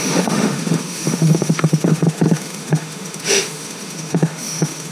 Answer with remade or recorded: remade